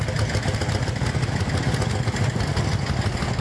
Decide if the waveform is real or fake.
real